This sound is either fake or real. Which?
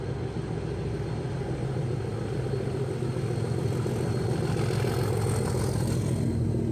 real